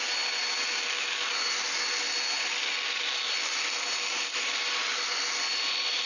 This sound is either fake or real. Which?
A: real